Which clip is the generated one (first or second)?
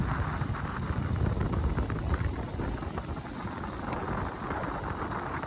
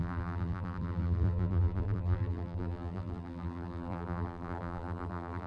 second